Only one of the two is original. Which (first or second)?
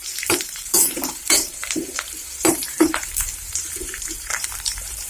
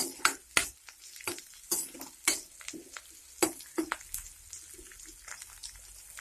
second